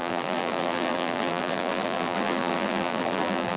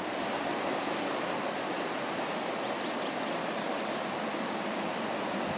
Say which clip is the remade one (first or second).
first